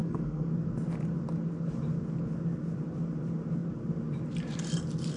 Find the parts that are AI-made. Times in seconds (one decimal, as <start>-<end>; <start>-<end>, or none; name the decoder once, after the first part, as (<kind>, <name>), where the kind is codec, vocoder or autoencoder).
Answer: 0.0-0.5 (codec, SNAC)